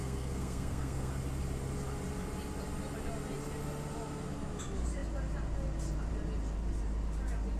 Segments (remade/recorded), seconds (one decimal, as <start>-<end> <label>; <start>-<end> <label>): 0.0-1.1 remade; 1.1-7.6 recorded